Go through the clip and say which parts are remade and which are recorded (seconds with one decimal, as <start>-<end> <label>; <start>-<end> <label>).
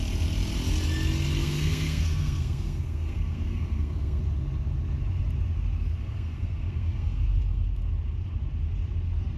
0.0-1.4 recorded; 1.4-4.2 remade; 4.2-6.0 recorded; 6.0-7.8 remade; 7.8-9.4 recorded